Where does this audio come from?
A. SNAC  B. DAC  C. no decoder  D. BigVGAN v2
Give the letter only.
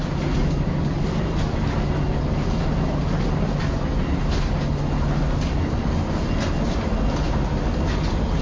C